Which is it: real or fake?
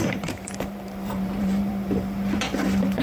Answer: fake